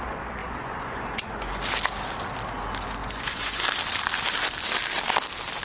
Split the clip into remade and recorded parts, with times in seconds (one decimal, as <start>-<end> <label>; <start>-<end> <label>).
0.0-0.4 recorded; 0.4-1.6 remade; 1.6-3.0 recorded; 3.0-3.6 remade; 3.6-5.6 recorded